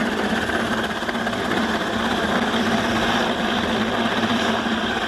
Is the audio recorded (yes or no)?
no